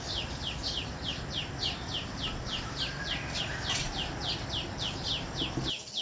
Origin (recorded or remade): recorded